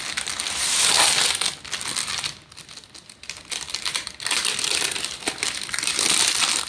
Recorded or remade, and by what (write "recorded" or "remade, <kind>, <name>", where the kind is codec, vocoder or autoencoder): recorded